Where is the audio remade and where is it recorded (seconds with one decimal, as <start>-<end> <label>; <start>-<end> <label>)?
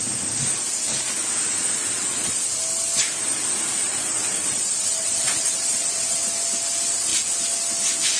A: 0.0-1.8 recorded; 1.8-2.5 remade; 2.5-3.8 recorded; 3.8-6.2 remade; 6.2-8.2 recorded